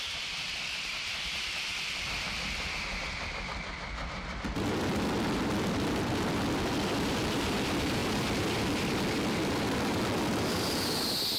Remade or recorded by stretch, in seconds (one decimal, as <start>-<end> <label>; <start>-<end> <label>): 0.0-11.4 remade